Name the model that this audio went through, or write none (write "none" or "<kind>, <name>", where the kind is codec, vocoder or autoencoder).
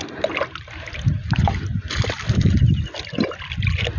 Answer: none